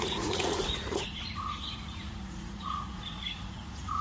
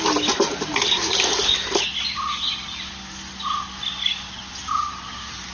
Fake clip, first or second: first